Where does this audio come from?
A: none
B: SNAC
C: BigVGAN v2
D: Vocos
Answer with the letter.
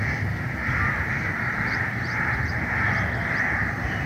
C